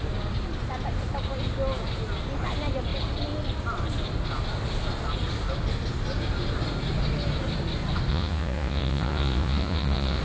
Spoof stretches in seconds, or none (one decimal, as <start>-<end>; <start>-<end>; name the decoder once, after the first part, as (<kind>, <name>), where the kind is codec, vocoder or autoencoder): 8.1-10.2 (vocoder, Vocos)